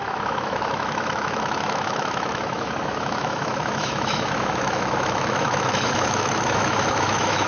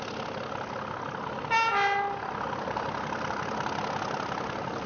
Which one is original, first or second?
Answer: second